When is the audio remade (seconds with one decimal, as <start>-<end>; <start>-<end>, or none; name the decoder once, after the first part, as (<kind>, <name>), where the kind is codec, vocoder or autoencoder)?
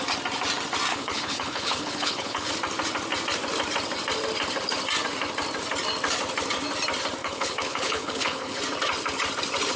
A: 0.9-2.5 (codec, HILCodec); 7.2-8.6